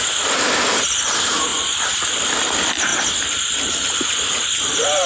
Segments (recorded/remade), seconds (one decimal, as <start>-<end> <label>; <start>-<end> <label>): 0.0-5.1 recorded